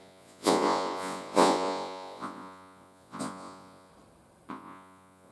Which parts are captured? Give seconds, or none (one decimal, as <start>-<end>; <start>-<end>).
3.9-4.5